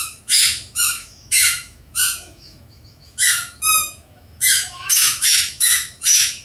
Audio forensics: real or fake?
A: fake